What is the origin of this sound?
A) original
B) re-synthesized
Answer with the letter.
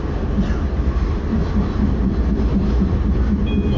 A